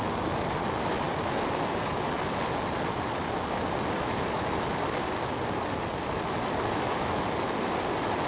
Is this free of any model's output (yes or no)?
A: yes